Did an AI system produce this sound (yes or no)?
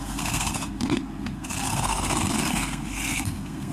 yes